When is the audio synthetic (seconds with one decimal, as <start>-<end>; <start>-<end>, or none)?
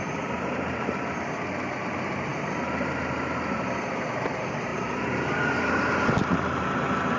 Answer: none